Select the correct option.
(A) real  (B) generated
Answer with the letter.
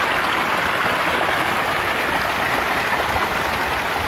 A